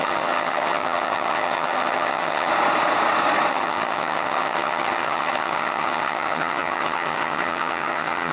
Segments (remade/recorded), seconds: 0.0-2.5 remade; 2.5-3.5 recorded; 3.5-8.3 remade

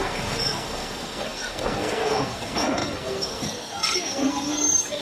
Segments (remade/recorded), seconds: 0.0-5.0 remade

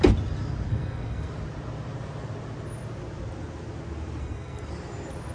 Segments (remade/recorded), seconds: 0.0-0.7 recorded; 0.7-1.3 remade; 1.3-4.2 recorded; 4.2-4.7 remade; 4.7-5.3 recorded

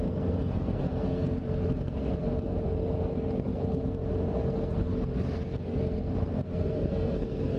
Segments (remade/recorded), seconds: 0.0-7.6 remade

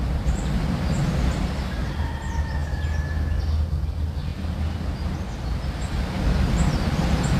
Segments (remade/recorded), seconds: 0.0-7.4 recorded

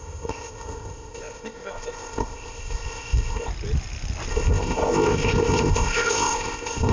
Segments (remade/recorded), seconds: 0.0-3.5 remade; 3.5-4.3 recorded; 4.3-6.9 remade